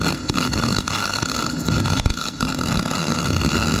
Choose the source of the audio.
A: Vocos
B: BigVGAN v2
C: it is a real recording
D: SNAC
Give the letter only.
D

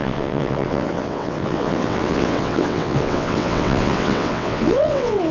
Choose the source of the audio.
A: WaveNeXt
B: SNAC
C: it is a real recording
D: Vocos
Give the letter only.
A